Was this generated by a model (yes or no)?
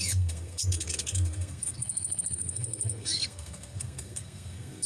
yes